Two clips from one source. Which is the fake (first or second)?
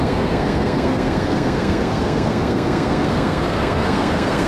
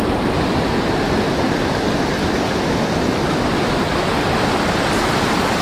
first